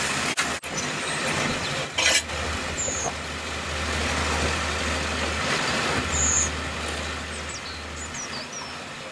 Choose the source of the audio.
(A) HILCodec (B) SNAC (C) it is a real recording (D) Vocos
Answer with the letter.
C